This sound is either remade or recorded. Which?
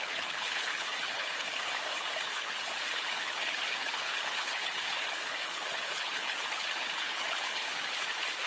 remade